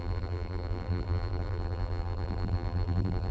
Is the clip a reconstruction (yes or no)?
yes